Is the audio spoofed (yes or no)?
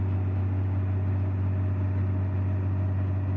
no